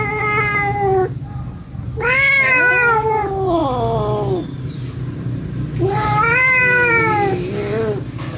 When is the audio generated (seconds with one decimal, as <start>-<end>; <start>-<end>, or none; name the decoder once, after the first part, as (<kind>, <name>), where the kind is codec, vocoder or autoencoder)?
4.4-6.6 (vocoder, BigVGAN v2)